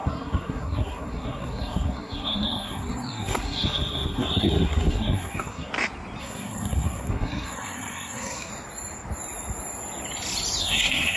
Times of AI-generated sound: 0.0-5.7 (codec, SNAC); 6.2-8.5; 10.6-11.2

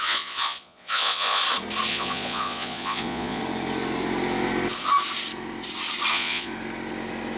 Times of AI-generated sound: 0.0-1.4 (vocoder, Vocos); 1.9-3.4; 6.1-6.5